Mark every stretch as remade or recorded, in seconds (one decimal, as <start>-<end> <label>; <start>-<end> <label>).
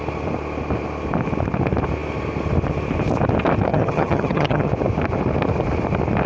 0.0-3.7 recorded; 3.7-4.7 remade; 4.7-6.3 recorded